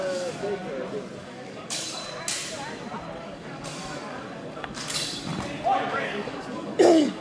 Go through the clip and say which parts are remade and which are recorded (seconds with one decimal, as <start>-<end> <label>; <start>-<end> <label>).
0.0-0.6 remade; 0.6-1.2 recorded; 1.2-2.0 remade; 2.0-3.2 recorded; 3.2-5.3 remade; 5.3-5.9 recorded; 5.9-7.2 remade